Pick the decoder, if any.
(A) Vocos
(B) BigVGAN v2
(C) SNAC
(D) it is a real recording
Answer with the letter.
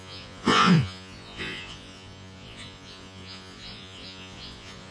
A